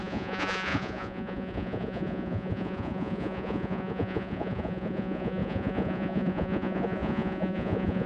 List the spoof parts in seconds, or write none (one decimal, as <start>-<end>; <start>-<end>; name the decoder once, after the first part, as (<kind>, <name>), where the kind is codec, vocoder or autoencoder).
0.0-8.1 (vocoder, Vocos)